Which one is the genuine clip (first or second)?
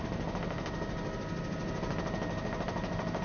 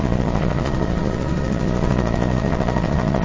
first